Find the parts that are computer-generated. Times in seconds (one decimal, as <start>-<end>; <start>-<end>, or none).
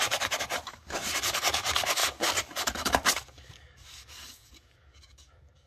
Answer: 0.0-5.7